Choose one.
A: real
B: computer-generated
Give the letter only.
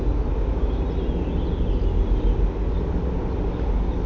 A